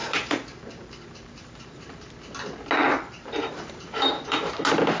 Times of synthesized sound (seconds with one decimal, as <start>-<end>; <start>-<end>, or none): 0.0-2.0; 2.8-4.5